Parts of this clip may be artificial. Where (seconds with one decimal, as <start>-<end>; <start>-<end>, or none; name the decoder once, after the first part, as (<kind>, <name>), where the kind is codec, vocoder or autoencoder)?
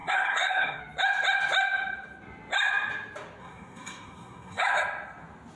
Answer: 0.0-0.8 (codec, SNAC); 3.4-4.6